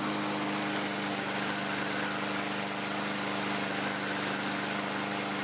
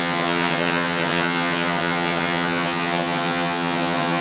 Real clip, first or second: first